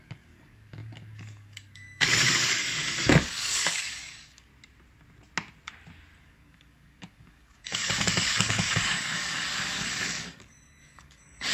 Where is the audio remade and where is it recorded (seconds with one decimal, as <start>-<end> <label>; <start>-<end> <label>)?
0.0-4.5 remade; 4.5-6.2 recorded; 6.2-11.5 remade

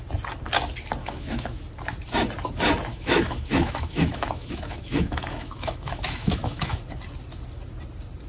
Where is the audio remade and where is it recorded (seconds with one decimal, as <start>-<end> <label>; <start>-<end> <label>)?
0.0-1.0 recorded; 1.0-1.6 remade; 1.6-2.9 recorded; 2.9-6.8 remade; 6.8-8.3 recorded

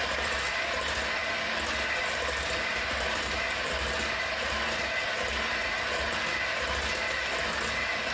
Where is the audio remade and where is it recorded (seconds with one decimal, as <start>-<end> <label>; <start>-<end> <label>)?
0.0-8.1 recorded

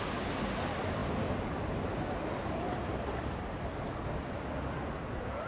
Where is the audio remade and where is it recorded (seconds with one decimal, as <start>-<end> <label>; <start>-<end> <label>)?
0.0-5.5 recorded